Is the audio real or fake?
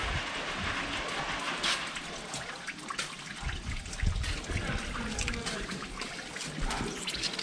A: real